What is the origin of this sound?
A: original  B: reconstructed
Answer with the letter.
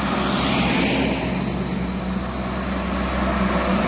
A